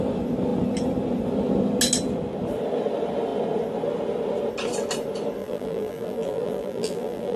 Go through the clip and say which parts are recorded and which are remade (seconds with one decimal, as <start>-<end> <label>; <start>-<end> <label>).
0.0-5.4 recorded; 5.4-7.4 remade